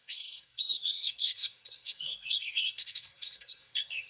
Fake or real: fake